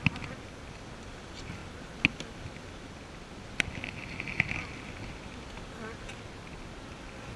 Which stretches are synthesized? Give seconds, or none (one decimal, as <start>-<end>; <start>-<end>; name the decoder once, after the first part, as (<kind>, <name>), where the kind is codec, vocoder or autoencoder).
none